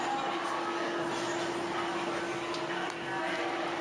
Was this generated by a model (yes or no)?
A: no